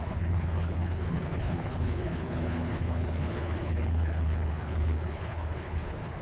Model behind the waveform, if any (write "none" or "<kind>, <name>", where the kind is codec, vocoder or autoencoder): codec, HILCodec